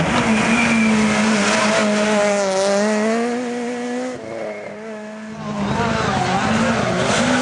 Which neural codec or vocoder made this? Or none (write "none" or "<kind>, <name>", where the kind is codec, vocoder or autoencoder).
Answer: none